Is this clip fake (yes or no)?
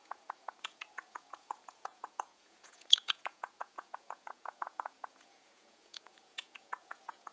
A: yes